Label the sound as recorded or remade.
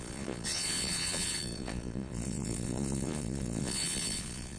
remade